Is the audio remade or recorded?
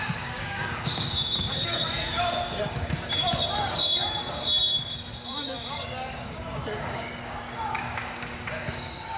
remade